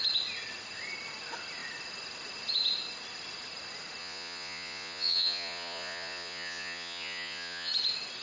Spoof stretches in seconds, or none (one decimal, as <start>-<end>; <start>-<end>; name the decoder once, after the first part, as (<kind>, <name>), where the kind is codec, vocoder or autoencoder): 4.0-7.7 (vocoder, Vocos)